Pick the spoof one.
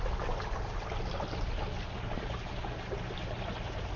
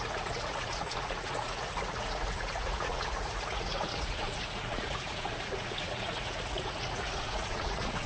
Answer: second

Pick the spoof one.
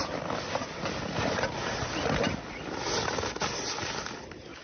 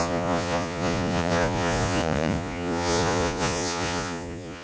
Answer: second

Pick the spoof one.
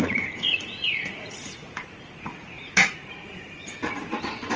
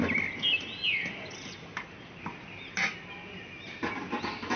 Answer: first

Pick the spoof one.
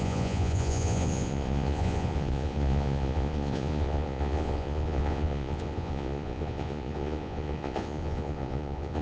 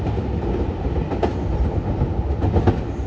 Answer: first